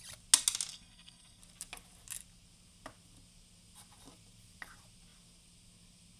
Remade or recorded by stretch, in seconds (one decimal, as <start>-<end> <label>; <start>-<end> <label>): 0.0-0.7 recorded; 0.7-1.4 remade; 1.4-6.2 recorded